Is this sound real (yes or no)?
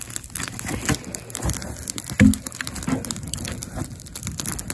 yes